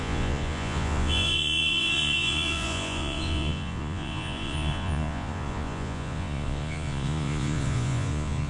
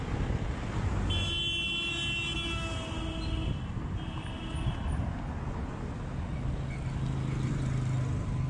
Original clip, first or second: second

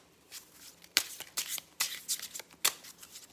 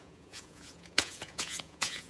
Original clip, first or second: first